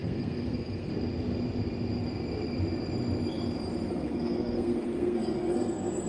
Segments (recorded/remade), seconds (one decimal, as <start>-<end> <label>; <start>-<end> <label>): 0.0-0.9 remade; 0.9-3.9 recorded; 3.9-6.1 remade